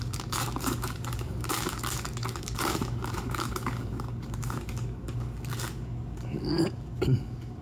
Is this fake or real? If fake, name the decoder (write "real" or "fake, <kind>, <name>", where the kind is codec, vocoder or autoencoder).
fake, codec, DAC